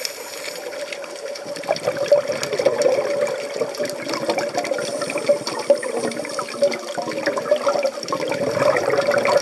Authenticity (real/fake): real